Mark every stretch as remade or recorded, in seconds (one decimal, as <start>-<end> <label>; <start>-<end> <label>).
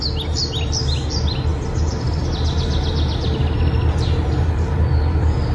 0.0-1.5 recorded; 1.5-2.2 remade; 2.2-5.5 recorded